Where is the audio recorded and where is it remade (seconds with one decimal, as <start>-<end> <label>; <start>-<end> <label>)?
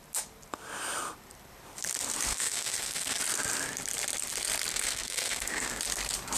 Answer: 0.0-2.3 recorded; 2.3-3.2 remade; 3.2-4.7 recorded; 4.7-5.8 remade; 5.8-6.4 recorded